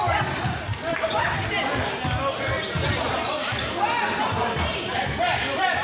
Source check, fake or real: real